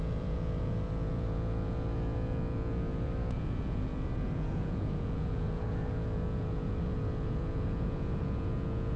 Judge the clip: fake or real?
fake